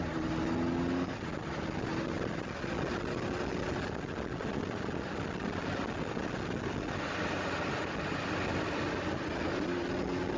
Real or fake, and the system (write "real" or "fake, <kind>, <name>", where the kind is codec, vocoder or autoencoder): real